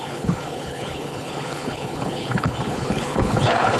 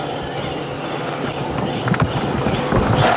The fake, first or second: first